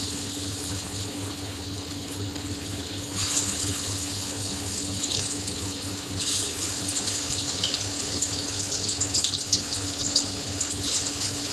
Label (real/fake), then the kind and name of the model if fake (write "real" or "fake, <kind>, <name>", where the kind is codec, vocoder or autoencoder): fake, codec, HILCodec